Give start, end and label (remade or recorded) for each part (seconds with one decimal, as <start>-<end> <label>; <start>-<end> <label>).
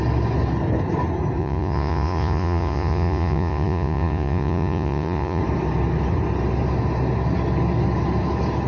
0.0-1.4 recorded; 1.4-5.4 remade; 5.4-8.7 recorded